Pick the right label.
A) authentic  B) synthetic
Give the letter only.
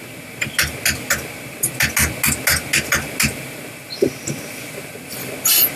A